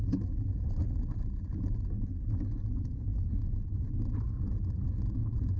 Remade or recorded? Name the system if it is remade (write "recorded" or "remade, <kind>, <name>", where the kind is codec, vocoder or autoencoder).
recorded